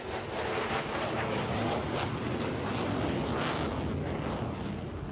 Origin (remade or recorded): recorded